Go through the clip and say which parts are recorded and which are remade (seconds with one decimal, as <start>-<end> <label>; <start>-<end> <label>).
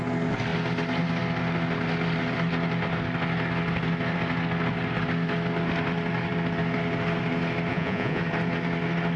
0.0-7.7 recorded; 7.7-8.2 remade; 8.2-9.2 recorded